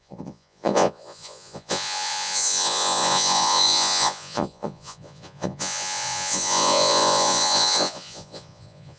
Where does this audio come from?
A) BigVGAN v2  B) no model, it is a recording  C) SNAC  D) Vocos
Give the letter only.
D